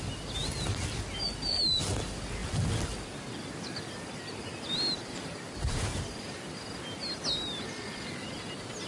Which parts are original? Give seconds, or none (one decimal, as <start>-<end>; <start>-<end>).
0.0-8.9